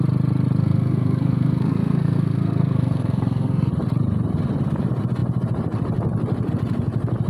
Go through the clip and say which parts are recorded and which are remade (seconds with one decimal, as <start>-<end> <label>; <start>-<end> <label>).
0.0-0.6 recorded; 0.6-3.7 remade; 3.7-7.3 recorded